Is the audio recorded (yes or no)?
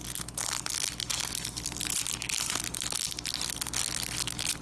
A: yes